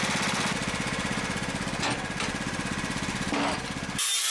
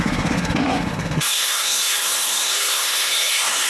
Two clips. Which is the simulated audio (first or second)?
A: second